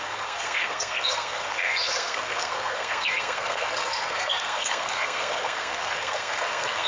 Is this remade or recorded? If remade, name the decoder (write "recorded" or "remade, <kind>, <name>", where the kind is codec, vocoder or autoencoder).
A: remade, codec, SNAC